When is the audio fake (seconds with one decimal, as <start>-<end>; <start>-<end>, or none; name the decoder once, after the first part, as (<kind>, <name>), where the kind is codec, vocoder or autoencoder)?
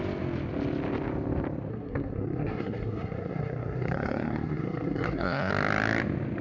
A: 1.7-5.5 (codec, SNAC)